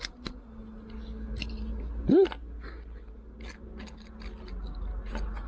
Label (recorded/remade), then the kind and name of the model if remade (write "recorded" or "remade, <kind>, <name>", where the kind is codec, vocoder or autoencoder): recorded